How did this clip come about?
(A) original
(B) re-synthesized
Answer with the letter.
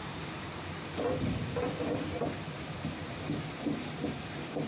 A